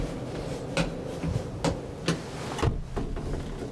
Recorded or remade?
recorded